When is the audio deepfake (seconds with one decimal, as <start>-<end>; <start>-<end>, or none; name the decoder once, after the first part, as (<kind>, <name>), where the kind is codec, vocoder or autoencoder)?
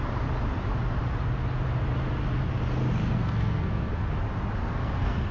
3.0-3.9 (codec, SNAC); 4.6-5.3